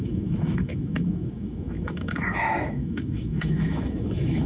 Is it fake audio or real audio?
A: fake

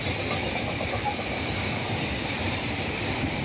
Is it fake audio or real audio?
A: real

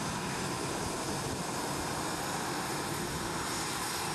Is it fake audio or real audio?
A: real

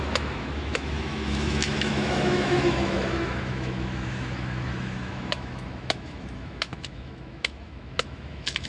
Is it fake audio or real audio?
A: fake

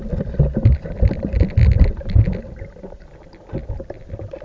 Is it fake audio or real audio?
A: real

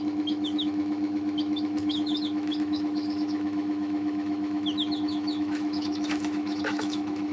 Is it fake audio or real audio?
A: fake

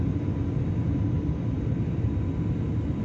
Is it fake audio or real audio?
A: real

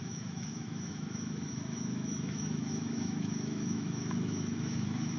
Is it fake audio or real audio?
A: fake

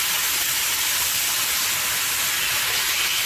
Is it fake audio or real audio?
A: real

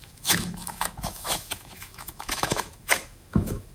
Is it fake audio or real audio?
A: fake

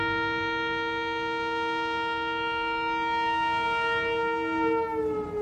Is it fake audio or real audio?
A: real